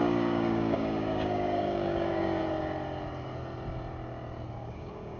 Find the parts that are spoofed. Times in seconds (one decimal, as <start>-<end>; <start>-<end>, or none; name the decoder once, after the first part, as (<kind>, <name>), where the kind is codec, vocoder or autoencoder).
0.0-2.4 (codec, DAC); 4.7-5.2